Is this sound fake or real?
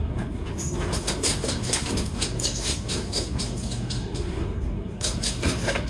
fake